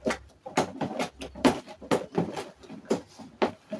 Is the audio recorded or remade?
recorded